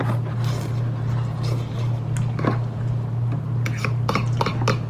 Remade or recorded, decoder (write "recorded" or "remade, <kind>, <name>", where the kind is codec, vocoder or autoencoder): recorded